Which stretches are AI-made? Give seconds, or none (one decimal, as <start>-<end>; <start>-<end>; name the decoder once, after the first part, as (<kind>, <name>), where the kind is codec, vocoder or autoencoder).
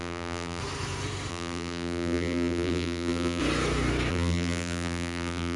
0.0-0.6 (vocoder, BigVGAN v2); 1.3-3.4; 4.1-5.6